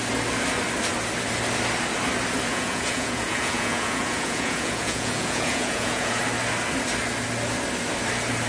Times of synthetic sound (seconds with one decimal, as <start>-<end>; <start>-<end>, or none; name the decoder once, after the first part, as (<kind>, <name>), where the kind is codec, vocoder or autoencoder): 2.5-6.2 (vocoder, Vocos)